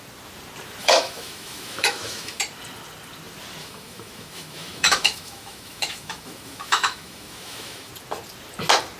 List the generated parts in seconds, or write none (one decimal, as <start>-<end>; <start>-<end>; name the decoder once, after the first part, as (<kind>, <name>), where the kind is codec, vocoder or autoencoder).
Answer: 0.8-2.4 (autoencoder, DAC-VAE); 3.6-7.9